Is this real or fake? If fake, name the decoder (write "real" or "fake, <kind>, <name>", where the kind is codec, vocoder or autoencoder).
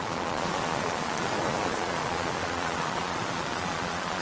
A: fake, vocoder, Vocos